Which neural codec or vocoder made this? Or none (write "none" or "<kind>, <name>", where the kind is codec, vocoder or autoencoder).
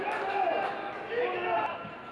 none